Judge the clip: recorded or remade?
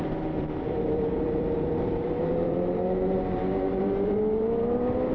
remade